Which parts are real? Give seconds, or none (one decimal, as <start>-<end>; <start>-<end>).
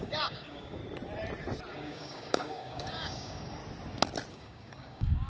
0.8-1.7; 3.6-4.3